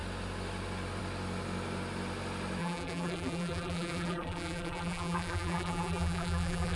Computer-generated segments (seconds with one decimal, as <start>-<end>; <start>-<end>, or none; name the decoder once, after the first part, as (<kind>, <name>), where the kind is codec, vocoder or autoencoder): 2.6-6.8 (vocoder, BigVGAN v2)

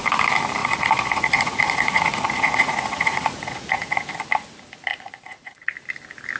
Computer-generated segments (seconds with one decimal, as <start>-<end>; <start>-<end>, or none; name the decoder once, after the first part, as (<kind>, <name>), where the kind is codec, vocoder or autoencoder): 0.6-4.1 (vocoder, Vocos); 4.9-5.7

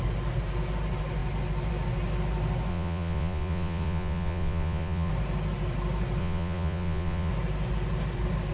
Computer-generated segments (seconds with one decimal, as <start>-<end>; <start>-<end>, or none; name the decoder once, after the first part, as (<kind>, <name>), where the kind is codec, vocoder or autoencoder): 2.7-5.1 (vocoder, Vocos); 6.2-7.3

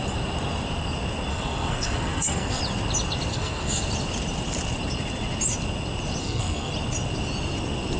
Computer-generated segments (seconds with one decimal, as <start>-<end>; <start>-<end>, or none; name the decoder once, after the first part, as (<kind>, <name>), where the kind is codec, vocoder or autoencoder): 1.3-2.6 (codec, SNAC); 3.3-3.8; 6.2-6.7

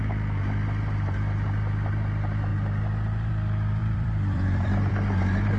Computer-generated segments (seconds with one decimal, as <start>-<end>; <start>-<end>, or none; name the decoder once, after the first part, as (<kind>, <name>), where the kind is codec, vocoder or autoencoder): 2.5-3.3 (vocoder, BigVGAN v2); 3.8-4.9